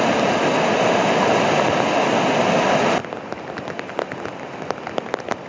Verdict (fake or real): real